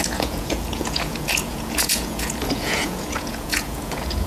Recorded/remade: remade